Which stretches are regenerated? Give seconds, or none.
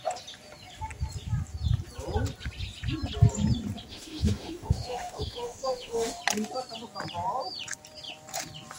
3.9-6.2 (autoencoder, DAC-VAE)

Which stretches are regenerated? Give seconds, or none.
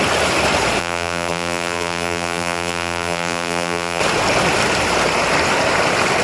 0.8-4.0 (vocoder, BigVGAN v2)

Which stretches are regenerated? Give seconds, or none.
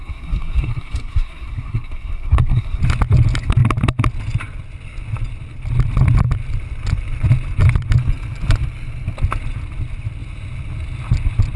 0.0-2.8 (codec, SNAC)